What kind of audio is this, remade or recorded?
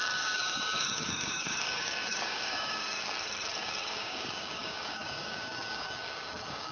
remade